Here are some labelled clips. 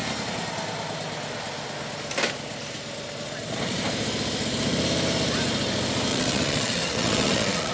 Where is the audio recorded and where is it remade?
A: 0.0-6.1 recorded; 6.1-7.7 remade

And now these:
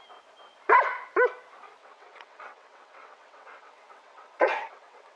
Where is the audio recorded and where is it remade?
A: 0.0-1.8 recorded; 1.8-5.2 remade

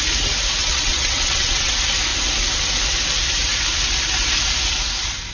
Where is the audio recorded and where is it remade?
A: 0.0-0.6 recorded; 0.6-1.7 remade; 1.7-5.3 recorded

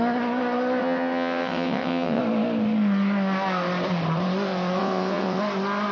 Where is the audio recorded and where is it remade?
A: 0.0-0.8 recorded; 0.8-2.2 remade; 2.2-4.8 recorded; 4.8-5.4 remade; 5.4-5.9 recorded

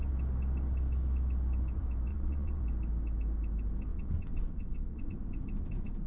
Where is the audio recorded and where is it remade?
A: 0.0-2.1 recorded; 2.1-2.6 remade; 2.6-3.9 recorded; 3.9-5.1 remade; 5.1-6.1 recorded

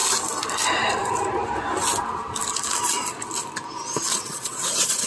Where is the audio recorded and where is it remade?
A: 0.0-4.1 recorded; 4.1-5.1 remade

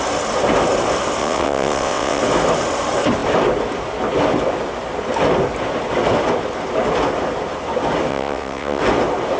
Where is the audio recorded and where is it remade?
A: 0.0-1.2 recorded; 1.2-2.2 remade; 2.2-8.1 recorded; 8.1-8.8 remade; 8.8-9.4 recorded